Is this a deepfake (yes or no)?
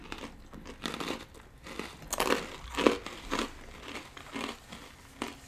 no